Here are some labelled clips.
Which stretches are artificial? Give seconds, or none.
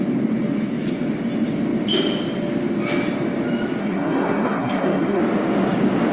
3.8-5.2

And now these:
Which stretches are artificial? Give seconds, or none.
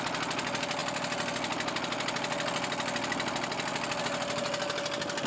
none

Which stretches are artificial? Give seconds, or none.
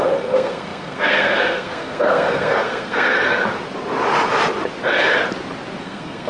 0.0-3.4; 5.8-6.3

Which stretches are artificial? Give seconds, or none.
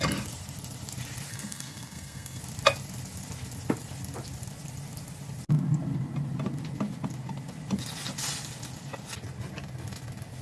1.3-2.4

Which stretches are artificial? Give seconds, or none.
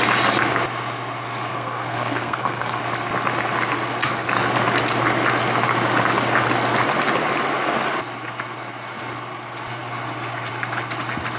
1.5-2.8